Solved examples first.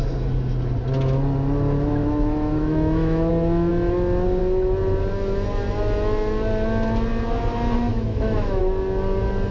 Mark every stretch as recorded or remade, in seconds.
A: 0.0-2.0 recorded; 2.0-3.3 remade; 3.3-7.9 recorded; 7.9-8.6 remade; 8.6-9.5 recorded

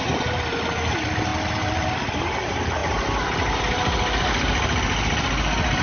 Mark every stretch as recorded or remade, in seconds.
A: 0.0-5.8 recorded

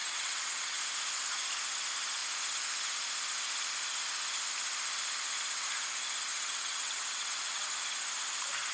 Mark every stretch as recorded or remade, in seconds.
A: 0.0-0.8 remade; 0.8-6.3 recorded; 6.3-7.7 remade; 7.7-8.7 recorded

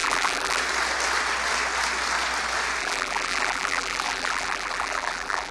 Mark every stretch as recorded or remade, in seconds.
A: 0.0-0.6 remade; 0.6-2.8 recorded; 2.8-5.5 remade

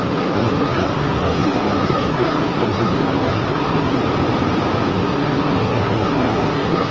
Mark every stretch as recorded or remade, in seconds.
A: 0.0-4.0 remade; 4.0-4.9 recorded; 4.9-6.9 remade

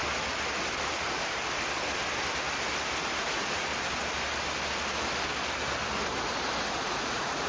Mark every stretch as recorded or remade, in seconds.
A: 0.0-3.3 recorded; 3.3-3.7 remade; 3.7-6.7 recorded; 6.7-7.5 remade